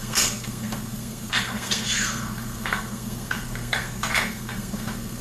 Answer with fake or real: fake